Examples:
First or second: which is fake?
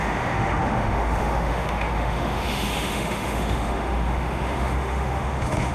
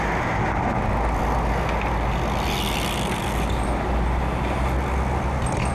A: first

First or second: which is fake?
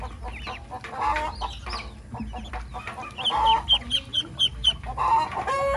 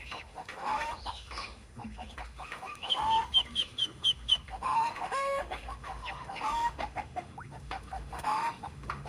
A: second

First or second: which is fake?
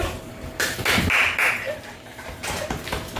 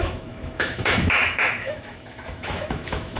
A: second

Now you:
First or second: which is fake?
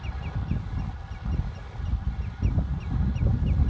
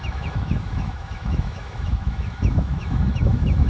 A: second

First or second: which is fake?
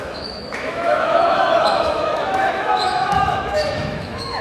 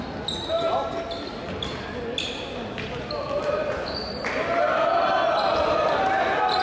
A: first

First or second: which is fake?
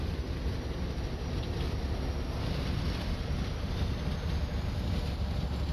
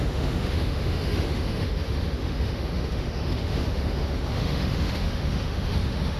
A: second